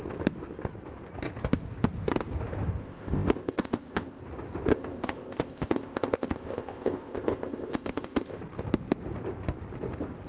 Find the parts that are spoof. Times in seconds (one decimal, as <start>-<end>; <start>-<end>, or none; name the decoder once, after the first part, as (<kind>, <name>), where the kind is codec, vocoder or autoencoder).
2.8-4.2 (codec, ZipCodec); 4.7-8.4

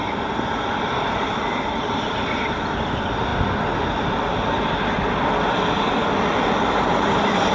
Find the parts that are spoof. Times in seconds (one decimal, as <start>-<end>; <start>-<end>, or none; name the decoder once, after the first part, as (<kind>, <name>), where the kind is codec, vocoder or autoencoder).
0.0-6.0 (vocoder, BigVGAN v2); 6.7-7.5

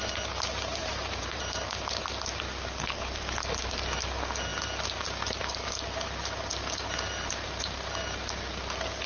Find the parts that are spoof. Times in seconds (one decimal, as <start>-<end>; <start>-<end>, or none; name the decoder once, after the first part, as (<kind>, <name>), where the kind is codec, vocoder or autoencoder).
0.7-1.4 (vocoder, BigVGAN v2)

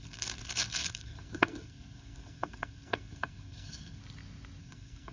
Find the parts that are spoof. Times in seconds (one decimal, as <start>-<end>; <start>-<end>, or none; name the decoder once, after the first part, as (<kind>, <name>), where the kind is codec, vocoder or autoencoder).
0.0-4.0 (codec, SNAC); 4.6-5.1